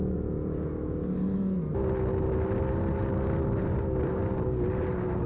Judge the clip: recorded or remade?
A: recorded